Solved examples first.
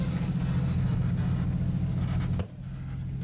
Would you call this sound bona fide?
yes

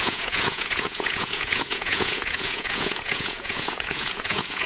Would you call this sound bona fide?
no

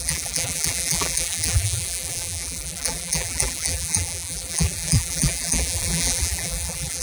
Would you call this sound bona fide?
no